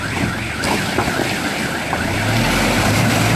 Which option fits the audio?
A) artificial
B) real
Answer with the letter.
B